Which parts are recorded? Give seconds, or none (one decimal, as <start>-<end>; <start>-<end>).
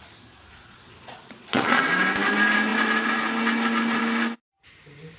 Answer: 0.0-0.5; 1.8-5.2